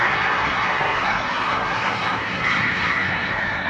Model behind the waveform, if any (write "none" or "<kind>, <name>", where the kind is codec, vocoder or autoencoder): codec, SNAC